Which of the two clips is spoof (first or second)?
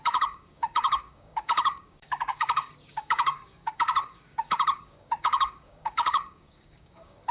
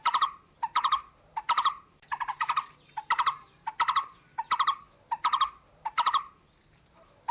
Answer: first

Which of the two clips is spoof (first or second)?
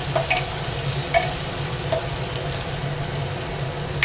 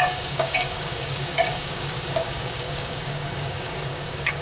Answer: second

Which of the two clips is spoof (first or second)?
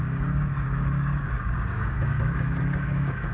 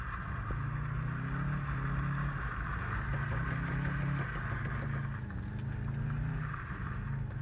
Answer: first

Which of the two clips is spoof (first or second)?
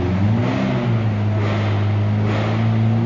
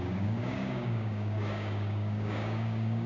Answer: second